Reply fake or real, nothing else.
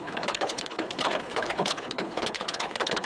fake